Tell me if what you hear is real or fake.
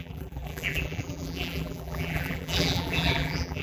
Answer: fake